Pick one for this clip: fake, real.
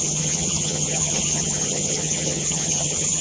fake